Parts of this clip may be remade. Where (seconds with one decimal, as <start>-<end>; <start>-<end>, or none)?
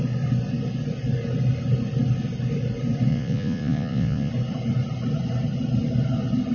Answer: 3.1-4.3